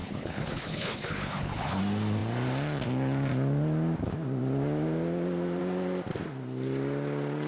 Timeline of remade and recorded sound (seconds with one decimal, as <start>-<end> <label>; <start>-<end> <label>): 0.0-1.8 remade; 1.8-7.5 recorded